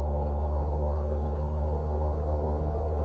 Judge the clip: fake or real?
fake